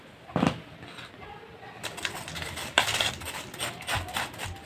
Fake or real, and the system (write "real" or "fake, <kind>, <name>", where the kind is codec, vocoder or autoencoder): real